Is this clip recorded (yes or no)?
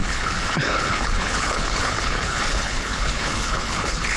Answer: no